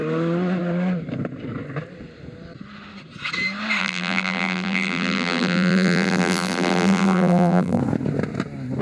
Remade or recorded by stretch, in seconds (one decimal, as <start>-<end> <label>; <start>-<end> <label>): 0.0-3.8 recorded; 3.8-7.8 remade; 7.8-8.8 recorded